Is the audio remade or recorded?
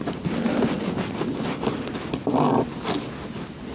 recorded